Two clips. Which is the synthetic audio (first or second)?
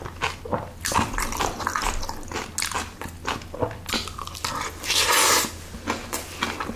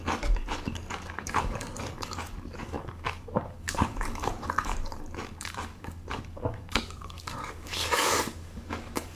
second